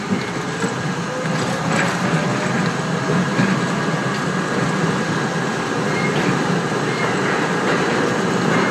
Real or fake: real